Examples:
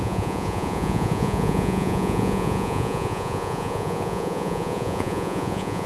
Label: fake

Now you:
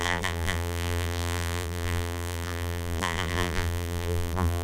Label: fake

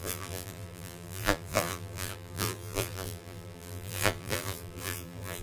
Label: fake